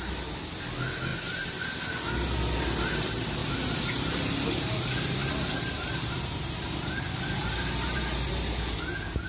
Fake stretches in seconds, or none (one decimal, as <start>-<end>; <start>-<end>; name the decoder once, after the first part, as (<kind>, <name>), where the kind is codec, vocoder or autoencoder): 3.4-7.0 (vocoder, BigVGAN v2); 7.4-8.3